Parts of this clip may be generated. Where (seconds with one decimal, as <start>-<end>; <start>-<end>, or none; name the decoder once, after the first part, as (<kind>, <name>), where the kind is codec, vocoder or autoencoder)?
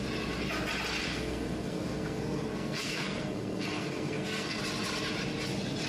1.1-4.6 (codec, SNAC)